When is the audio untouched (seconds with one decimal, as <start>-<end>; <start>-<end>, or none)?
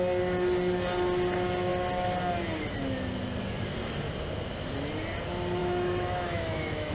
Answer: 0.0-5.6